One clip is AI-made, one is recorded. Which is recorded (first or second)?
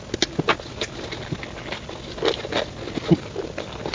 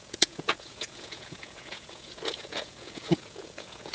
first